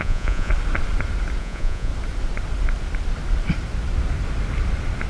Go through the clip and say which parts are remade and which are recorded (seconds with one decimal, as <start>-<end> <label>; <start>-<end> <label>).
0.0-0.5 remade; 0.5-1.4 recorded; 1.4-1.9 remade; 1.9-5.1 recorded